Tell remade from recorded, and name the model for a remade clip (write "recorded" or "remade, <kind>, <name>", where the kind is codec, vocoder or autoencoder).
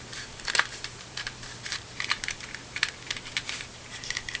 remade, vocoder, BigVGAN v2